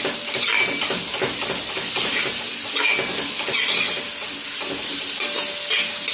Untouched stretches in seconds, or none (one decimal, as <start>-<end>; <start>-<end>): 0.0-6.1